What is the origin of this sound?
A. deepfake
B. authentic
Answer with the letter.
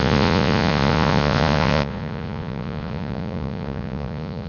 A